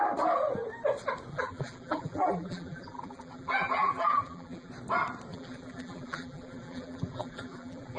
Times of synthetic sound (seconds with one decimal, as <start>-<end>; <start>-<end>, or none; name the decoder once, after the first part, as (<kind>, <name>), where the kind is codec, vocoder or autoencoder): 1.3-4.7 (vocoder, BigVGAN v2); 5.3-8.0